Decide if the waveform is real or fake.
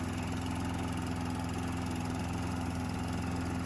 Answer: real